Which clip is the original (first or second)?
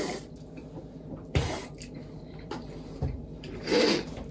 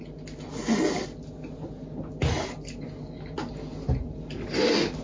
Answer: second